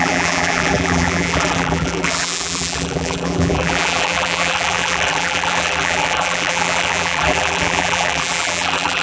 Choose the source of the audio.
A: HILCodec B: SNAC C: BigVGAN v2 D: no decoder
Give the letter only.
C